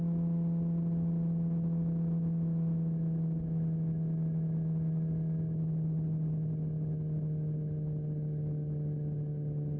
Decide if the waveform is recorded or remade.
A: recorded